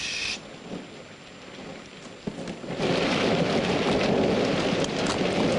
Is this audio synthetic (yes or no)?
no